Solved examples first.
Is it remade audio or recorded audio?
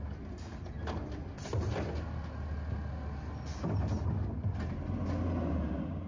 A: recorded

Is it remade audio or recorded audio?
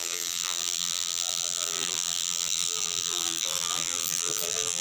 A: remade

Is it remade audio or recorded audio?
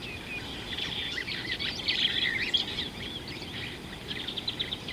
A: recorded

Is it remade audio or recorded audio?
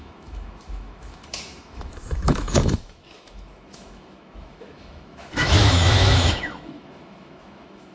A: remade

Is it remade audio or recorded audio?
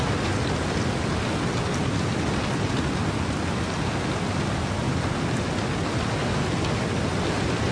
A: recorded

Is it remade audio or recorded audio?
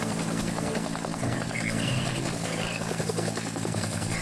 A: remade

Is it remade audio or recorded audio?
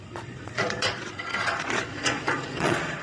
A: remade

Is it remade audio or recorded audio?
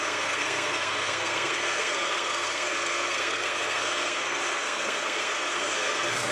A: remade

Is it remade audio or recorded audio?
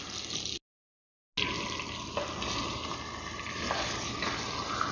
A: recorded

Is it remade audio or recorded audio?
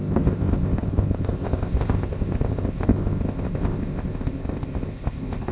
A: remade